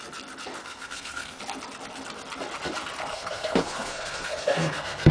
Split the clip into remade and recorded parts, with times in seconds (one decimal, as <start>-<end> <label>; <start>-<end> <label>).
0.0-0.6 recorded; 0.6-1.4 remade; 1.4-3.1 recorded; 3.1-5.1 remade